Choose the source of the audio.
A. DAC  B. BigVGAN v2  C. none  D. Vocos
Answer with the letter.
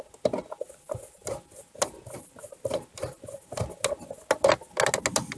C